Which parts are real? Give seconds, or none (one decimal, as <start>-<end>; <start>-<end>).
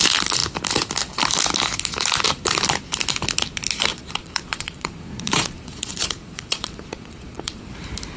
0.0-3.9; 7.6-8.2